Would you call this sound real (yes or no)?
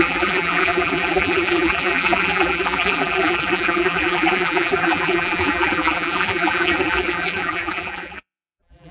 no